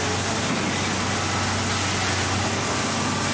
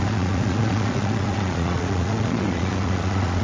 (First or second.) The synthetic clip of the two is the second